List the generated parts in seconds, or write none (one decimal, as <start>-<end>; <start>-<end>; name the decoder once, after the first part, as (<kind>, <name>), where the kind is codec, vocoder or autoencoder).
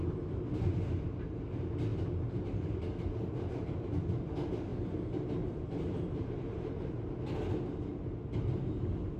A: 1.9-2.8 (vocoder, BigVGAN v2); 4.7-6.9